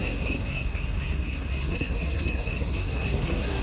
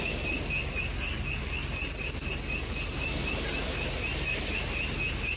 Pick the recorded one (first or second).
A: second